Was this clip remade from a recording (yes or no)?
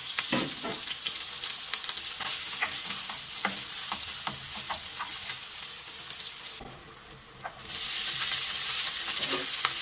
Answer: no